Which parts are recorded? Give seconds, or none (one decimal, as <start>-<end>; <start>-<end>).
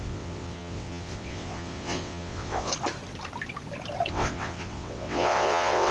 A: 2.7-4.1